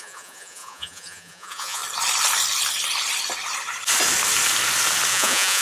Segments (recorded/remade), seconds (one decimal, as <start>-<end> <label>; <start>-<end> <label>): 0.0-1.8 remade; 1.8-5.1 recorded; 5.1-5.6 remade